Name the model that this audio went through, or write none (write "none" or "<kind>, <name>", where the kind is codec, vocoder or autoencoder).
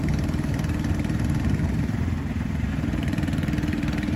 vocoder, BigVGAN v2